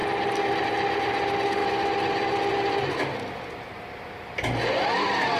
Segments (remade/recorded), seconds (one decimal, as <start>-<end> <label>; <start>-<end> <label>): 0.0-5.4 recorded